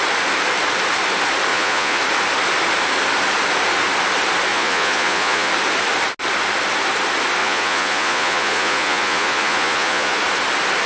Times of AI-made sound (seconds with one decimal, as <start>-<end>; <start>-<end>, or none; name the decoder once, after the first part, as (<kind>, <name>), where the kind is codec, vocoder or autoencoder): 1.5-2.0 (vocoder, Vocos); 4.5-5.5; 7.4-10.2